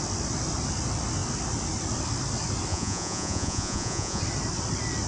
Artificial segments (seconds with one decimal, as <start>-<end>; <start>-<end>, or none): 2.7-4.2